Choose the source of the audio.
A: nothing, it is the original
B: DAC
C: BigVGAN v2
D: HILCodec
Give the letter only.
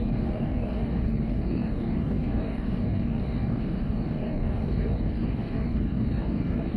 B